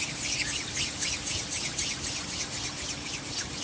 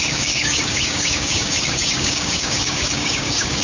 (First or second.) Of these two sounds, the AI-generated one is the second